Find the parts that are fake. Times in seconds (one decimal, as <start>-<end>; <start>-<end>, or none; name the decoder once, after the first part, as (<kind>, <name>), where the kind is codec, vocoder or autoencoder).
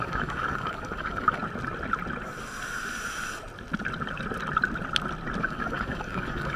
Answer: 0.0-1.4 (codec, DAC); 5.4-6.6